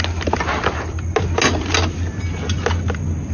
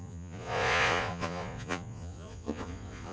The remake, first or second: second